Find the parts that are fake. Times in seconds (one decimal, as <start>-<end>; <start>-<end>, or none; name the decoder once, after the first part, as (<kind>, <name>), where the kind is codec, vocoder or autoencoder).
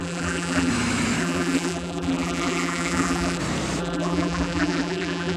0.0-0.7 (vocoder, BigVGAN v2); 1.2-3.4; 3.8-5.4